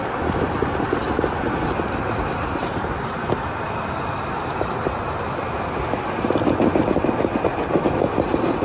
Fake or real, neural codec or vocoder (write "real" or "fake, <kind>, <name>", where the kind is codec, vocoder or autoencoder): real